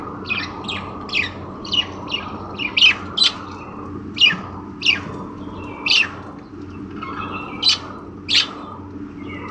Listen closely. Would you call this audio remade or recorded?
recorded